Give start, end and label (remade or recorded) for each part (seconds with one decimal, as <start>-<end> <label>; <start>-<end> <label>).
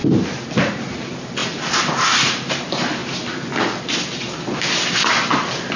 0.0-5.8 recorded